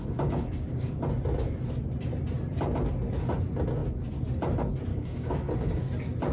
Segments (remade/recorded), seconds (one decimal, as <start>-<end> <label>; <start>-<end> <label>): 0.0-1.0 remade; 1.0-4.9 recorded; 4.9-5.8 remade; 5.8-6.3 recorded

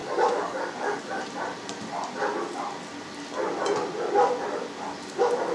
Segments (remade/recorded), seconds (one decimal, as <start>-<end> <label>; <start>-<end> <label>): 0.0-1.2 remade; 1.2-5.5 recorded

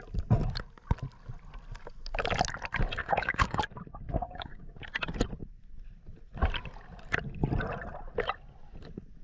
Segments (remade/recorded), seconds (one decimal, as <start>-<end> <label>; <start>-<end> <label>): 0.0-3.0 recorded; 3.0-3.6 remade; 3.6-4.1 recorded; 4.1-4.7 remade; 4.7-9.2 recorded

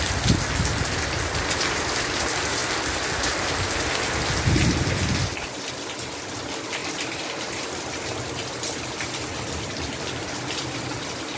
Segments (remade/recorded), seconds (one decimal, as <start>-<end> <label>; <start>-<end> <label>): 0.0-11.4 recorded

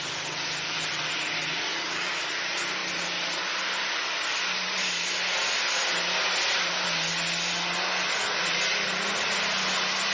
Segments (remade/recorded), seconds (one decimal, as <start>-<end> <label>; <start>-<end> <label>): 0.0-1.7 recorded; 1.7-2.3 remade; 2.3-10.1 recorded

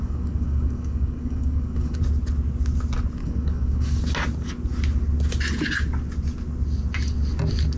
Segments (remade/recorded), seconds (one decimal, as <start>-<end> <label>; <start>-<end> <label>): 0.0-2.0 remade; 2.0-3.2 recorded; 3.2-4.0 remade; 4.0-7.8 recorded

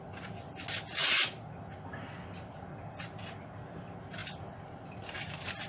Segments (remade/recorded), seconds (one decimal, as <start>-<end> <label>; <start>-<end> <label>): 0.0-5.7 recorded

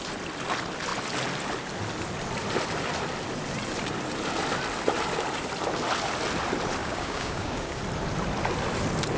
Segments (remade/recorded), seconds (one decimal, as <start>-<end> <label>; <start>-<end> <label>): 0.0-6.8 recorded; 6.8-7.8 remade; 7.8-9.2 recorded